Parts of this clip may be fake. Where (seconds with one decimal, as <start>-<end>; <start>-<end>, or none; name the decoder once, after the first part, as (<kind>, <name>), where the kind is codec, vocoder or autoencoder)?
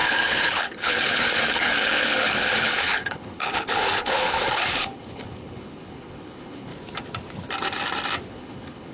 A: 0.0-6.7 (codec, HILCodec); 8.3-8.9